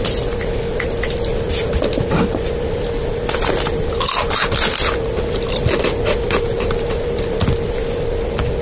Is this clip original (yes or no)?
yes